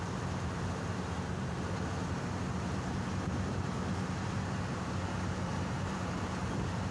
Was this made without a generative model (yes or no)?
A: no